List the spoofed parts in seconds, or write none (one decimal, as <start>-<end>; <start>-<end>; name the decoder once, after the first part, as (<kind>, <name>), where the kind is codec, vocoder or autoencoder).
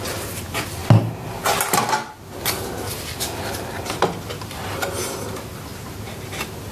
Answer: none